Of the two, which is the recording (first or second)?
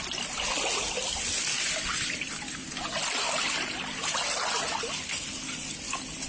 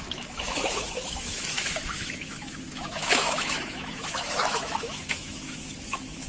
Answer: first